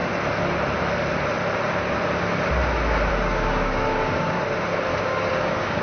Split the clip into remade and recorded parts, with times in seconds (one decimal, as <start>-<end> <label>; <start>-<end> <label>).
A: 0.0-3.1 recorded; 3.1-4.4 remade; 4.4-4.9 recorded; 4.9-5.8 remade

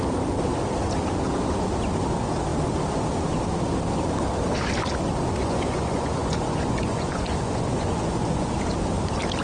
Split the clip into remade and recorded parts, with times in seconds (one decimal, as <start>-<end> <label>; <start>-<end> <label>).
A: 0.0-5.4 recorded; 5.4-8.5 remade; 8.5-9.4 recorded

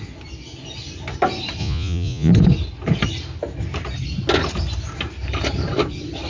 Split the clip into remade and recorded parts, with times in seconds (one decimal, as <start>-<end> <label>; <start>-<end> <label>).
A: 0.0-1.6 recorded; 1.6-2.3 remade; 2.3-6.3 recorded

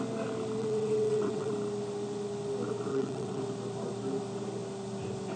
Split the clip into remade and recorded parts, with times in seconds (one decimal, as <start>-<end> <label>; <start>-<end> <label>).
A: 0.0-0.6 recorded; 0.6-1.5 remade; 1.5-2.9 recorded; 2.9-3.4 remade; 3.4-5.4 recorded

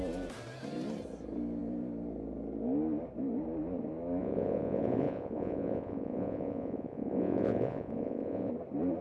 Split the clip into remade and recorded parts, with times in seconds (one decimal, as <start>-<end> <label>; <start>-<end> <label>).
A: 0.0-4.2 recorded; 4.2-8.5 remade; 8.5-9.0 recorded